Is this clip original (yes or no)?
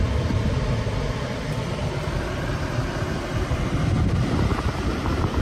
no